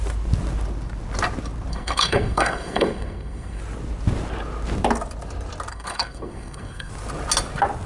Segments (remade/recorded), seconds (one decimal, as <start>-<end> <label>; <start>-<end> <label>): 0.0-1.7 recorded; 1.7-3.6 remade; 3.6-5.7 recorded; 5.7-6.9 remade; 6.9-7.9 recorded